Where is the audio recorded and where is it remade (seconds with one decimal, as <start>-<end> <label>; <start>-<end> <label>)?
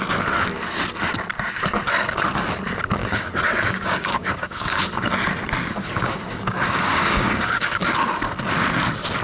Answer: 0.0-3.0 recorded; 3.0-5.1 remade; 5.1-5.8 recorded; 5.8-7.8 remade; 7.8-9.2 recorded